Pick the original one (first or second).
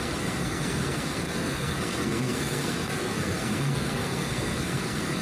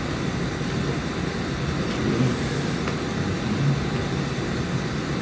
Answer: second